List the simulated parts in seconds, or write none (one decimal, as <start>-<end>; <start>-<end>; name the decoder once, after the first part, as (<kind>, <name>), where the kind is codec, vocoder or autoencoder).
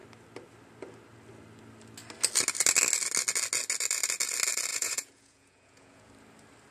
4.7-6.1 (vocoder, Vocos)